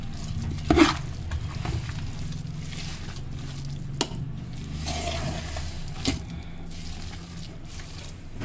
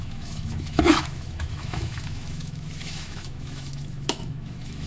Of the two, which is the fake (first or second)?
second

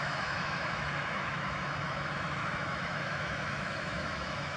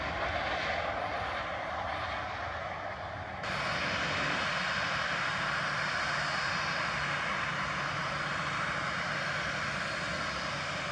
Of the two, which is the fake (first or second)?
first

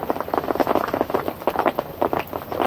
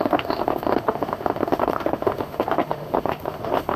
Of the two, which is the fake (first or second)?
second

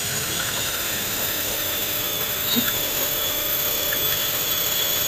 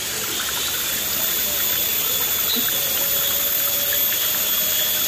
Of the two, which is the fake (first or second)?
first